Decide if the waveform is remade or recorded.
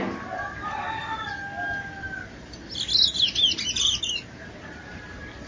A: recorded